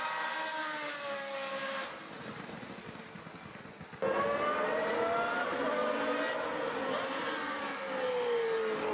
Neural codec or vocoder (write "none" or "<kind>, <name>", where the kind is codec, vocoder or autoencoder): none